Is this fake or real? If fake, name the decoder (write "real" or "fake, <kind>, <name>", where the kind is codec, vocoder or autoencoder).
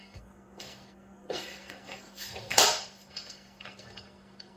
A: fake, codec, SNAC